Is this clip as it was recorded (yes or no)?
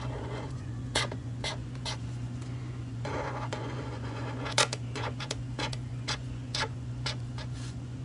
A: no